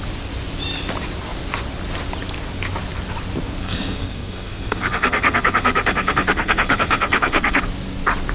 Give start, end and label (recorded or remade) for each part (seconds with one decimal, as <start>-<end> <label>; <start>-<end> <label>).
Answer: 0.0-3.6 recorded; 3.6-7.6 remade; 7.6-8.3 recorded